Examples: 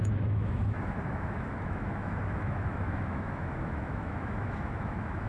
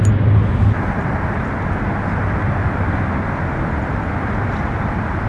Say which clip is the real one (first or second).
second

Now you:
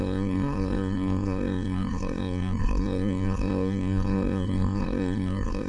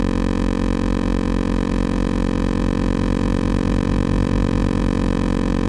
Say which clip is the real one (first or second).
second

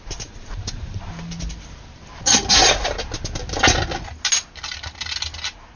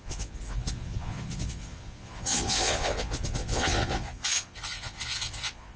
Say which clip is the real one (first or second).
first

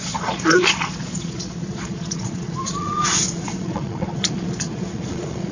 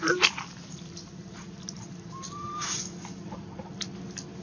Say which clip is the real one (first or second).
second